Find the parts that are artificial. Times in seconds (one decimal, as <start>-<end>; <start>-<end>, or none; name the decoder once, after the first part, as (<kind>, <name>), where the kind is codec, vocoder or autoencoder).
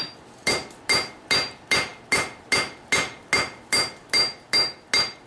none